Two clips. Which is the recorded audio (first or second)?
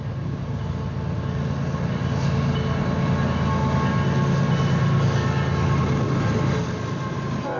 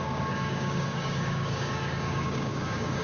first